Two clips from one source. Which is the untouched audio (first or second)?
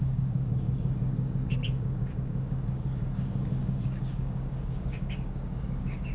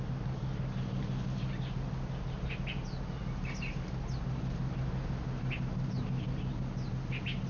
second